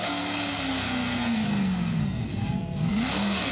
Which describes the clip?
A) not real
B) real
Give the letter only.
A